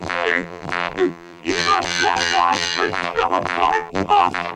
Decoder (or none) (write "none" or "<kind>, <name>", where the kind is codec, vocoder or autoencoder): vocoder, BigVGAN v2